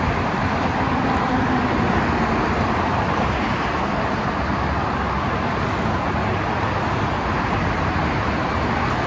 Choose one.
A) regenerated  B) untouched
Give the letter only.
B